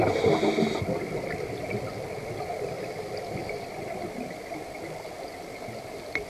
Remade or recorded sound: recorded